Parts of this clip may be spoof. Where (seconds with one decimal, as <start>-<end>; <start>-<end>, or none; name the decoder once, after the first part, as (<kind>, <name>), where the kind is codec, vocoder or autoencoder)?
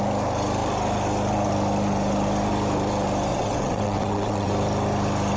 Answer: 3.3-4.5 (vocoder, WaveNeXt)